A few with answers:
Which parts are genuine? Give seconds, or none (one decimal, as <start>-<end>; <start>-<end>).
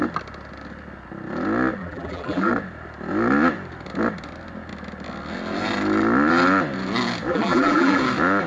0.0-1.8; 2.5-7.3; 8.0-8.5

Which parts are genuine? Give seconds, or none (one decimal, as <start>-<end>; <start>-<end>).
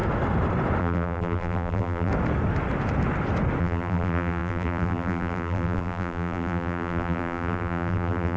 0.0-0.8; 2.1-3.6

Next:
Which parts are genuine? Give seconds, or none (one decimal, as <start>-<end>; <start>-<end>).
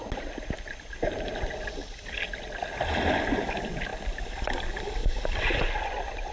0.0-5.0; 5.7-6.3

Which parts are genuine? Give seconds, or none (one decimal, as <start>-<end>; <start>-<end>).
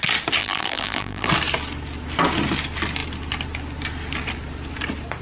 0.0-0.4; 1.3-5.2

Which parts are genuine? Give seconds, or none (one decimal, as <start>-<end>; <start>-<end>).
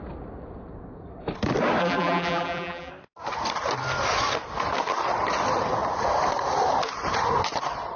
0.0-1.8; 2.9-8.0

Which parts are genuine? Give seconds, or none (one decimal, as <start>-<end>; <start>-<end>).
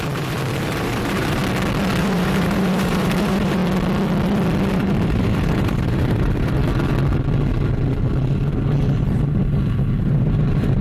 1.4-2.0; 3.6-4.7; 6.6-10.0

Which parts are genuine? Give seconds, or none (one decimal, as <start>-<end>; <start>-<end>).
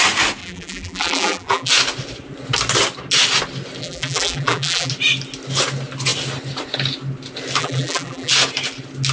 0.0-0.4; 1.7-3.8; 4.9-7.6; 8.3-9.1